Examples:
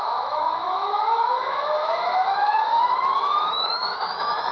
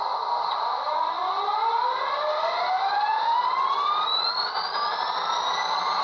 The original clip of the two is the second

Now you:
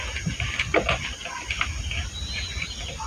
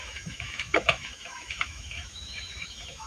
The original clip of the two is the first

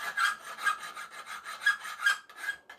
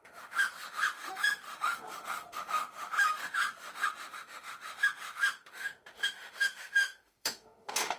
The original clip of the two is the first